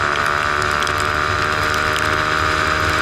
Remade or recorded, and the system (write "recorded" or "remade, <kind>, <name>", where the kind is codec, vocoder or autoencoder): recorded